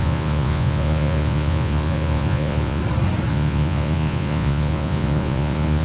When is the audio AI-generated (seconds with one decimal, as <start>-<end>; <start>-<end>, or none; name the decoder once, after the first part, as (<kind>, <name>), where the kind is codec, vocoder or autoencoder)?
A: 0.0-2.8 (vocoder, Vocos); 3.3-5.8